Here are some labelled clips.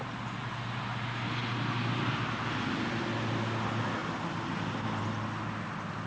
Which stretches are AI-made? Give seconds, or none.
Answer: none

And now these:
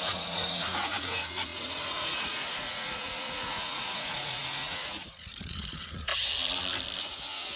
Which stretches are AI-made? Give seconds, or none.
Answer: 0.0-6.1; 7.0-7.6

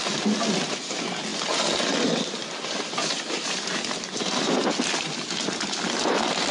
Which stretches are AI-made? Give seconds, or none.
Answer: none